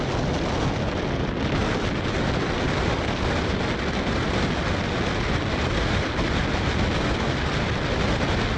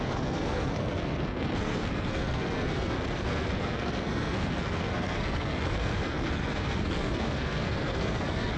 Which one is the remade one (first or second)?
second